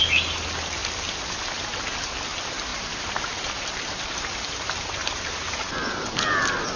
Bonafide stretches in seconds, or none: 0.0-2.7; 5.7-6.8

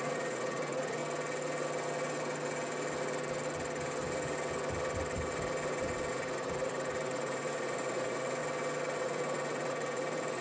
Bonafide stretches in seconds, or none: 1.0-6.1; 8.4-9.0

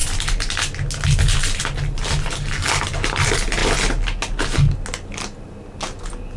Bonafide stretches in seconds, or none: 0.0-6.4